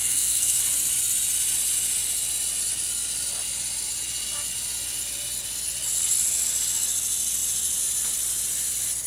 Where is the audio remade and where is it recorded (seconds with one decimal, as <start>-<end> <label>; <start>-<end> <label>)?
0.0-0.6 remade; 0.6-9.1 recorded